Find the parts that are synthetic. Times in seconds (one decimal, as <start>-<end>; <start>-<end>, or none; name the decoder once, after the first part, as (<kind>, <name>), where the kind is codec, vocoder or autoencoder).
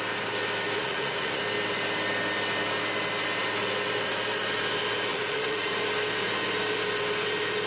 0.8-1.4 (vocoder, Vocos); 5.1-5.7